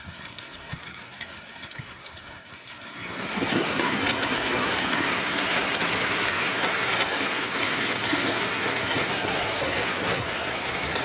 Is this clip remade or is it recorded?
remade